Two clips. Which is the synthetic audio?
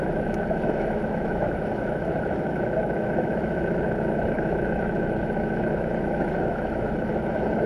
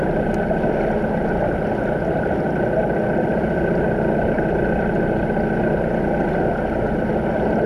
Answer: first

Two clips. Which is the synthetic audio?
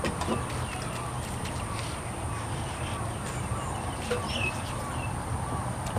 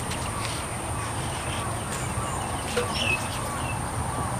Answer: first